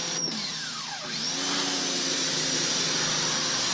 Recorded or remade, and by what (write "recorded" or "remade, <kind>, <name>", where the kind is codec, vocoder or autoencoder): recorded